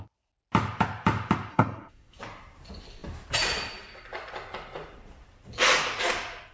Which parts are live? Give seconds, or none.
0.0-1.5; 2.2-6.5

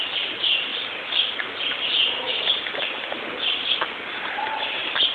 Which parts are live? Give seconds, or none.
0.0-5.1